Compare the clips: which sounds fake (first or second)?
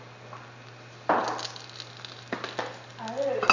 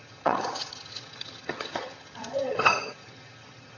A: second